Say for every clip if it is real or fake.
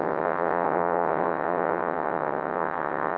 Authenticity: fake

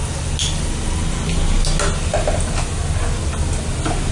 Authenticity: real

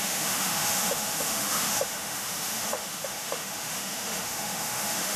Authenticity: fake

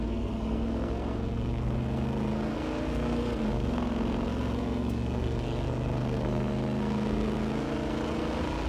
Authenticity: fake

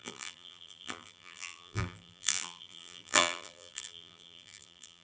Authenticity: fake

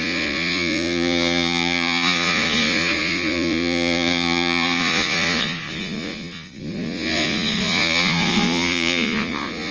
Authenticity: fake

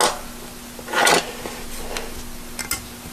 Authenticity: real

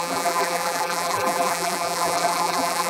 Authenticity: fake